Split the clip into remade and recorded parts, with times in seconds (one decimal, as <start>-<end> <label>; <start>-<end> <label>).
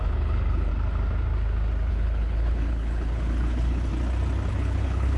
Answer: 0.0-0.7 remade; 0.7-1.9 recorded; 1.9-3.9 remade; 3.9-4.5 recorded; 4.5-5.2 remade